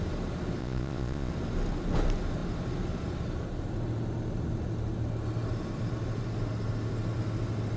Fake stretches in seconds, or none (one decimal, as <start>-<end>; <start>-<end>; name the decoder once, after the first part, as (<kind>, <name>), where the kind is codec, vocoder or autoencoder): 0.6-1.3 (vocoder, Vocos)